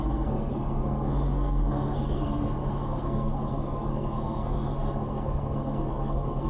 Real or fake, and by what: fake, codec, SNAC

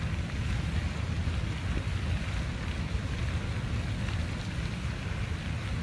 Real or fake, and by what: real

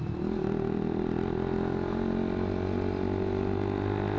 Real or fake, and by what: real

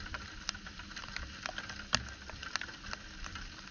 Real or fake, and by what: real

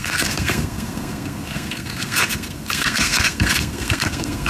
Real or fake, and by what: fake, codec, SNAC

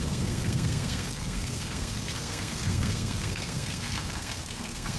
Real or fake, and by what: fake, codec, SNAC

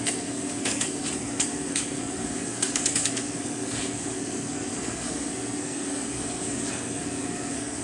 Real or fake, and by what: fake, codec, SNAC